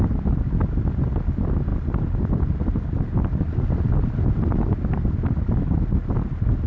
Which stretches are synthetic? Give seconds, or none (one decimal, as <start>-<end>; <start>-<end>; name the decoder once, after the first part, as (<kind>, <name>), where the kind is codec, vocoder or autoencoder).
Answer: none